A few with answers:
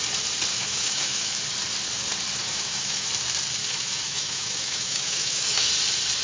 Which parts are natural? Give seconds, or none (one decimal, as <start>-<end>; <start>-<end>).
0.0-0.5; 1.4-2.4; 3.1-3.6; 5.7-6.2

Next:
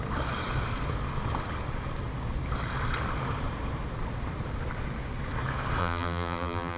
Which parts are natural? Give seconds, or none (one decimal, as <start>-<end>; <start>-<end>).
0.0-5.8

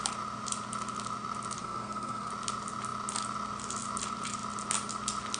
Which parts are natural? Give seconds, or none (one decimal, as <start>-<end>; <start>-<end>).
0.0-1.6; 2.3-5.4